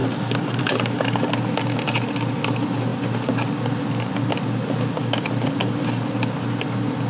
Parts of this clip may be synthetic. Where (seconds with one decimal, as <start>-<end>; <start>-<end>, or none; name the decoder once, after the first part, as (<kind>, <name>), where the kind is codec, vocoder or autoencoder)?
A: none